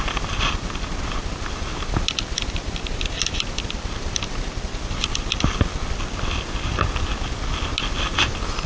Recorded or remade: recorded